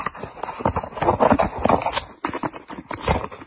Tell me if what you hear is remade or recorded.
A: recorded